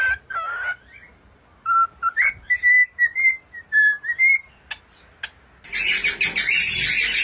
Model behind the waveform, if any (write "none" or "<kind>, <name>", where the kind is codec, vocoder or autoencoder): none